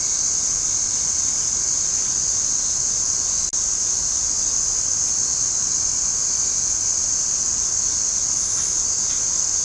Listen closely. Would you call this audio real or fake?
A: real